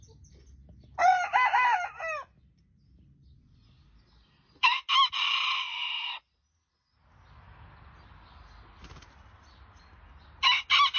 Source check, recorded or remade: recorded